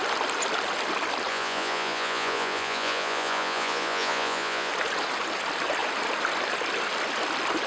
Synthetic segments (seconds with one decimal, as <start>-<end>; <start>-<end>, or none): 1.3-4.7